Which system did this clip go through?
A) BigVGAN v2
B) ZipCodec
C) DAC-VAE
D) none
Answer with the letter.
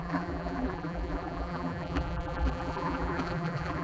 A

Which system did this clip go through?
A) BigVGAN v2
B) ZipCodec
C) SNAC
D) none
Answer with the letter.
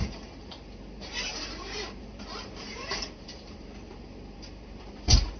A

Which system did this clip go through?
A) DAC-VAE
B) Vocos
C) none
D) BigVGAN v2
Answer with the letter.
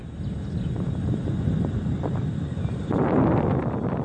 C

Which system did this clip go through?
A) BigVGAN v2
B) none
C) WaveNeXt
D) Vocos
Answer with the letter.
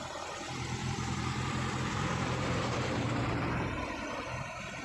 A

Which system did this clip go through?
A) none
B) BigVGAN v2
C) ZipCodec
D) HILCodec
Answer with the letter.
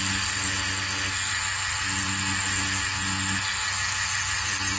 A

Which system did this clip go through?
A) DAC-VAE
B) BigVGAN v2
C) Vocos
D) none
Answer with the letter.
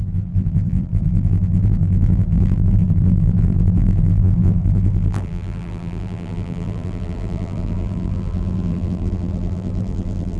B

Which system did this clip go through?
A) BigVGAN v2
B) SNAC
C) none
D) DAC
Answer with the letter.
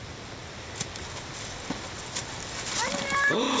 A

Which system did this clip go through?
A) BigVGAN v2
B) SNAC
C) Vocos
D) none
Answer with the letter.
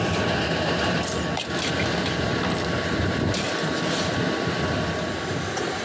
D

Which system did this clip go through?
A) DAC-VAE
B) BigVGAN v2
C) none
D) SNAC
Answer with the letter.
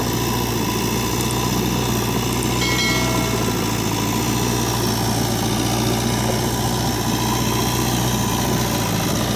C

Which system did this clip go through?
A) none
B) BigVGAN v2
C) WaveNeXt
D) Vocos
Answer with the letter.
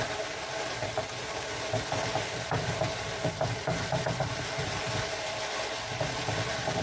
B